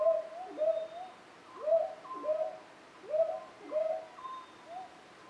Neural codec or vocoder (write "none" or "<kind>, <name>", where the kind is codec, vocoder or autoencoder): none